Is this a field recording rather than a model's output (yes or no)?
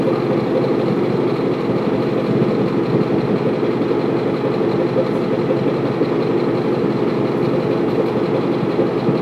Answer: yes